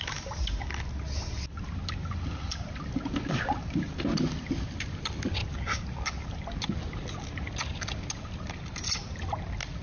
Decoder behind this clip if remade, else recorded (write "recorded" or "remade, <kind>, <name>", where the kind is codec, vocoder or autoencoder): recorded